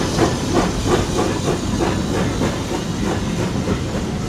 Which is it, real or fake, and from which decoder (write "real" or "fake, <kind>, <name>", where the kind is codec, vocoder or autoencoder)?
real